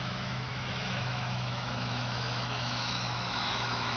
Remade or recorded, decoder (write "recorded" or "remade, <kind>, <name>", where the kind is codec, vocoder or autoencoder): remade, autoencoder, DAC-VAE